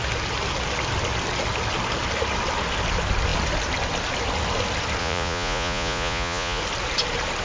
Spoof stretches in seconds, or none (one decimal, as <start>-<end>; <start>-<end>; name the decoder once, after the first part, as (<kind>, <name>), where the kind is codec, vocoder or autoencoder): 5.0-6.6 (vocoder, Vocos)